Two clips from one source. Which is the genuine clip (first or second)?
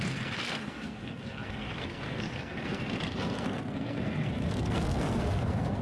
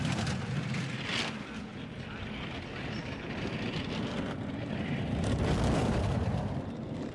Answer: second